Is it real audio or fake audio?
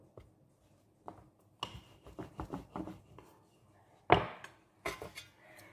real